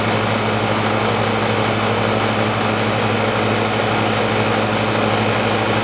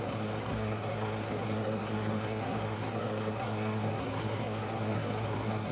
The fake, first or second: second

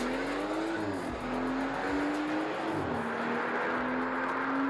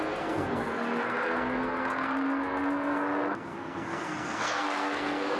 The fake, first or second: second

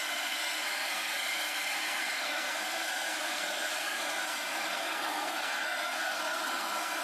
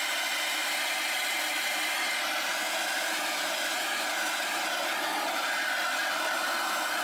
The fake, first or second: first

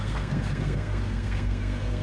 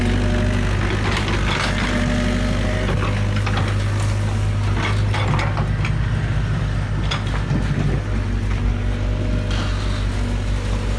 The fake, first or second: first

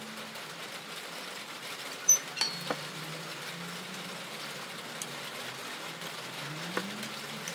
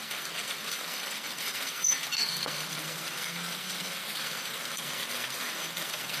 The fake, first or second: second